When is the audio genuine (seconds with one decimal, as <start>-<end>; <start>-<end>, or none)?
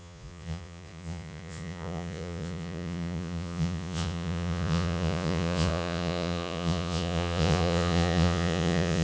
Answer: none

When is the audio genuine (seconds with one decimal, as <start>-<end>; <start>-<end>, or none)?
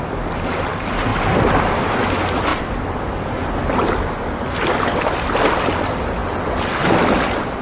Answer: 0.0-1.1; 1.8-2.5; 3.0-7.6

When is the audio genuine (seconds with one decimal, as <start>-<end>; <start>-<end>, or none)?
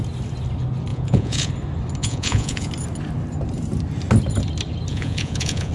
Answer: 0.0-0.9; 1.5-2.0; 2.7-4.9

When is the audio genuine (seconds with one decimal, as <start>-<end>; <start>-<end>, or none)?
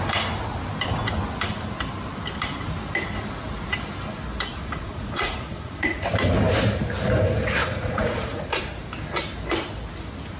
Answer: 0.0-4.5; 6.0-7.6; 8.6-10.4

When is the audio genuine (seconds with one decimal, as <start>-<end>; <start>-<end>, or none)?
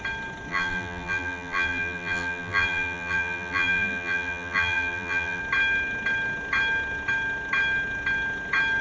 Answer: 0.0-0.5; 5.4-8.8